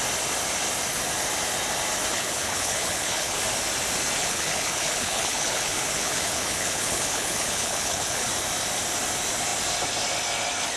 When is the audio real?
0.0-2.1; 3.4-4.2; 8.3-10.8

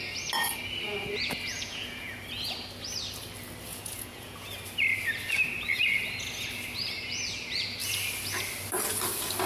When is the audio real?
0.0-1.5; 2.2-3.7; 4.5-9.5

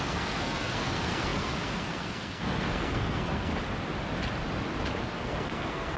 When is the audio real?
3.5-5.0

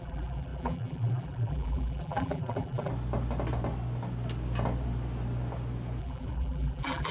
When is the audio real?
2.9-6.0

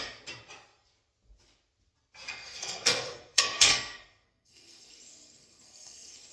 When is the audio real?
0.0-2.3

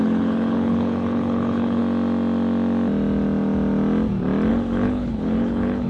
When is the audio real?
1.8-4.5